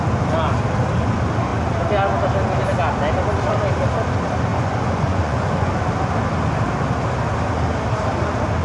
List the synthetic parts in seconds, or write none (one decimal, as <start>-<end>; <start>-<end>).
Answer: 4.5-5.7

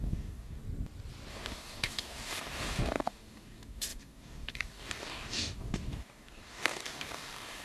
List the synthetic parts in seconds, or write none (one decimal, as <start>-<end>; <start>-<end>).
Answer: 0.0-0.6; 1.3-7.6

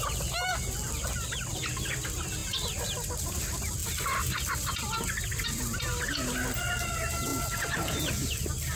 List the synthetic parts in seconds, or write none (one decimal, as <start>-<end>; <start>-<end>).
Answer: none

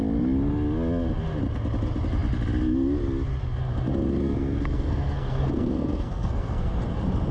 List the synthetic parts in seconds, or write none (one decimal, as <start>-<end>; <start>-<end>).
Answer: 4.2-6.8

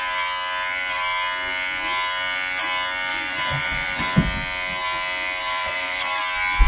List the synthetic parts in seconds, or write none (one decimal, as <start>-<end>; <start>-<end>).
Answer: 3.1-4.0; 5.4-6.2